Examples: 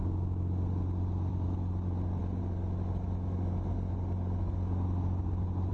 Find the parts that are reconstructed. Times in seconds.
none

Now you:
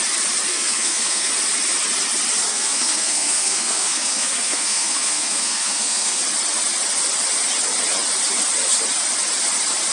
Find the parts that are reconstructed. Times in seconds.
0.5-1.3 (codec, SNAC); 2.5-6.2